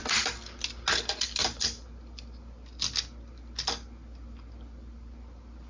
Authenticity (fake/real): real